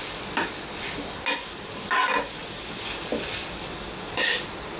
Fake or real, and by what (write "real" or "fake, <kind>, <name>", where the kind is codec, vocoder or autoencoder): real